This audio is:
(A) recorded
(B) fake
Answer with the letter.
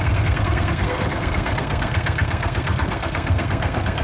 B